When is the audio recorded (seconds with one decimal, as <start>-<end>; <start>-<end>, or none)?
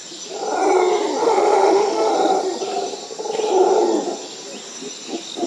0.0-1.2; 2.1-5.5